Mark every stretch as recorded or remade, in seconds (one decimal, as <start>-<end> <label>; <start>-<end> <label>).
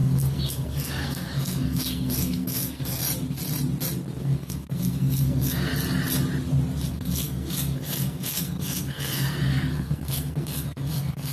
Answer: 0.0-3.0 remade; 3.0-4.2 recorded; 4.2-5.7 remade; 5.7-6.9 recorded; 6.9-11.3 remade